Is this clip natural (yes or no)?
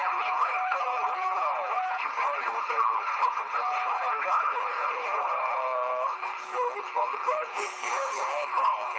no